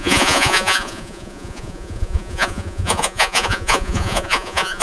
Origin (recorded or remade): remade